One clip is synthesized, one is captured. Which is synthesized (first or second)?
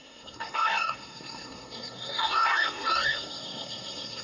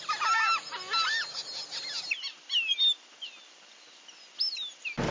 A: first